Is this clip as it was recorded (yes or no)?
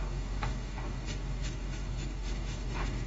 no